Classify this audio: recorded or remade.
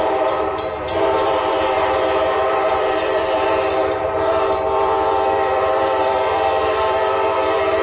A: remade